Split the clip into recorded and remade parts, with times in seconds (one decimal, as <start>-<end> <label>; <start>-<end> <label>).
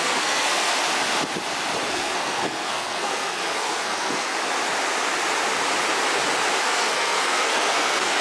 0.0-0.7 remade; 0.7-1.9 recorded; 1.9-4.3 remade; 4.3-6.6 recorded; 6.6-8.2 remade